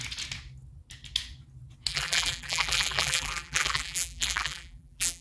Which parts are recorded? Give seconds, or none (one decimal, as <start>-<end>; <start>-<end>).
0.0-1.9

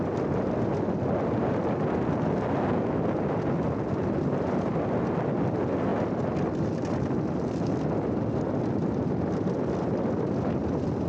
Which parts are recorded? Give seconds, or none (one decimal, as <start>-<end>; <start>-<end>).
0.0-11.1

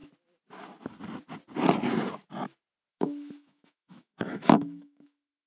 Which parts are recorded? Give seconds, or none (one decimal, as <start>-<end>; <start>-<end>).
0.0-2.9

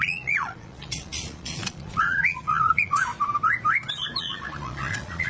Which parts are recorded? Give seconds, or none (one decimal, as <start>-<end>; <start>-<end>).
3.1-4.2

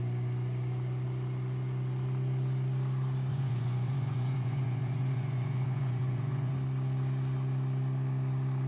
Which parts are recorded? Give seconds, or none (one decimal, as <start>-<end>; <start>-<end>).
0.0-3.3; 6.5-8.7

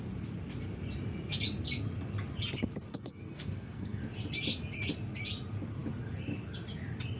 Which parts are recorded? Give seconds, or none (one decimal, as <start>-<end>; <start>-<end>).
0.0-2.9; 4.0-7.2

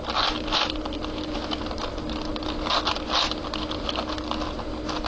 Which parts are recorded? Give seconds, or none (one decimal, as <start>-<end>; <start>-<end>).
0.0-5.1

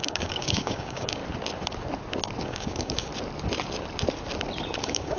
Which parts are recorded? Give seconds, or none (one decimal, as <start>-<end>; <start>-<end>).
1.2-2.4; 3.1-4.8